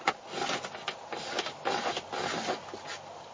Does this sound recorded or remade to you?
recorded